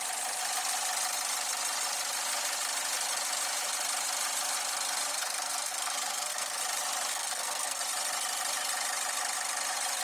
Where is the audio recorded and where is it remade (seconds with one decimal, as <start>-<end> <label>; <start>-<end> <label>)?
0.0-5.1 recorded; 5.1-6.6 remade; 6.6-7.1 recorded; 7.1-7.8 remade; 7.8-10.0 recorded

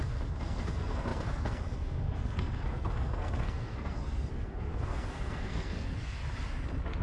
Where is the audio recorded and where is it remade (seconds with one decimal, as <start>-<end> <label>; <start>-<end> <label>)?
0.0-6.2 remade; 6.2-7.0 recorded

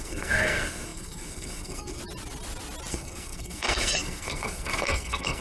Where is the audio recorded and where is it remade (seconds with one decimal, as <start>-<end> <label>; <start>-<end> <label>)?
0.0-2.0 remade; 2.0-2.9 recorded; 2.9-5.4 remade

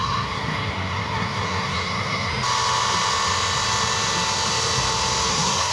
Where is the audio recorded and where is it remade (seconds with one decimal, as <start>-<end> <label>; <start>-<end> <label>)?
0.0-2.3 remade; 2.3-5.3 recorded; 5.3-5.7 remade

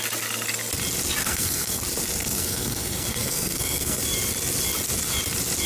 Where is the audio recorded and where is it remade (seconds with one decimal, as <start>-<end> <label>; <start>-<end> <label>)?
0.0-1.2 recorded; 1.2-1.8 remade; 1.8-2.2 recorded; 2.2-4.0 remade; 4.0-5.7 recorded

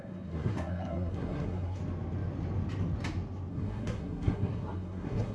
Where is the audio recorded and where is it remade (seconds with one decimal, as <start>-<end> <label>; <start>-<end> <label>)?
0.0-1.8 remade; 1.8-3.5 recorded; 3.5-5.3 remade

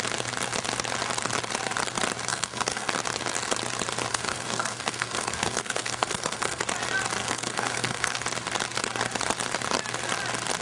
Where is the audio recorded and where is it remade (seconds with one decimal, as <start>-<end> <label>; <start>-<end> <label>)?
0.0-2.3 recorded; 2.3-2.9 remade; 2.9-4.1 recorded; 4.1-6.6 remade; 6.6-7.2 recorded; 7.2-8.2 remade; 8.2-10.6 recorded